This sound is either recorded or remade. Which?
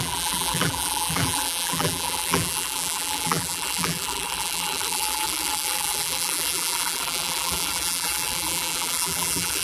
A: remade